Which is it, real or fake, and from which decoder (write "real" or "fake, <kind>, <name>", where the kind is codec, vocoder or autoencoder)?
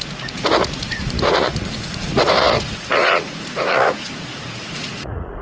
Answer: fake, vocoder, Vocos